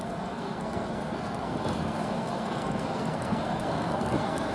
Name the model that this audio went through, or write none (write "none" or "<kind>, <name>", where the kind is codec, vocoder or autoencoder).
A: codec, SNAC